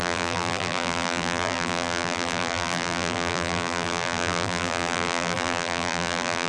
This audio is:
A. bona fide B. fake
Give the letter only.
B